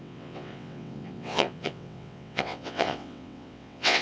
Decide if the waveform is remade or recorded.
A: remade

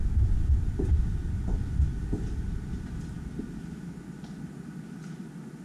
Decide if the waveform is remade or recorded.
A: recorded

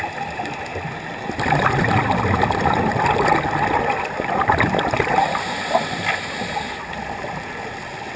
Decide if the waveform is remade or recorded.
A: recorded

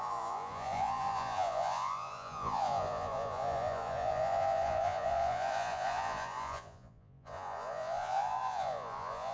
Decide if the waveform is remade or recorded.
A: remade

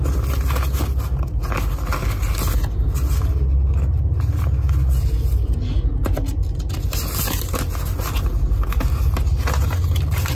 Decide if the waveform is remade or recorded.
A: recorded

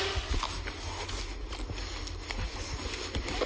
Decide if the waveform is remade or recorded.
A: recorded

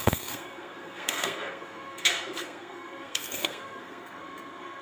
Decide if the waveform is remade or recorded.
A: remade